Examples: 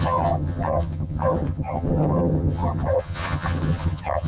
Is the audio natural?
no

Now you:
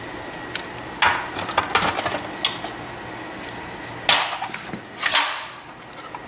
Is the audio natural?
yes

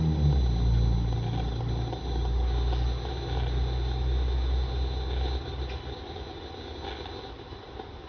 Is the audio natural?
yes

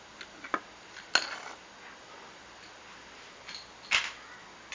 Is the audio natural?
yes